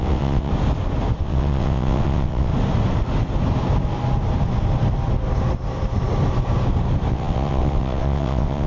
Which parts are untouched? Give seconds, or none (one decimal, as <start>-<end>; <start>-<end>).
0.5-1.2; 2.5-7.1